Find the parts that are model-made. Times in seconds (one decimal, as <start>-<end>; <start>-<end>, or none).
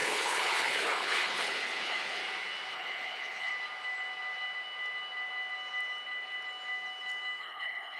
0.0-2.2; 2.7-3.5; 7.4-8.0